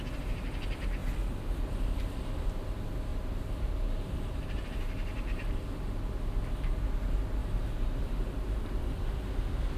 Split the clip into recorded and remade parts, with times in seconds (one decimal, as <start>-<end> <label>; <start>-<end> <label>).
0.0-3.1 recorded; 3.1-5.7 remade; 5.7-7.4 recorded; 7.4-8.8 remade; 8.8-9.8 recorded